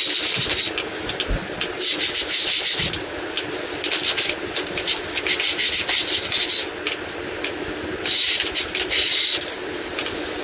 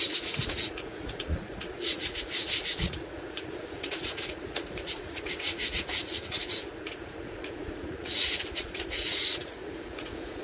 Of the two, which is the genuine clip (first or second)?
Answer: first